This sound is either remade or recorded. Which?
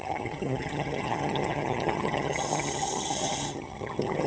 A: remade